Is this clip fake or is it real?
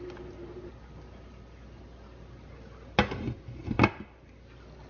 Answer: real